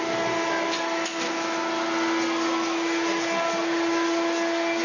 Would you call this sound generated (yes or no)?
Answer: no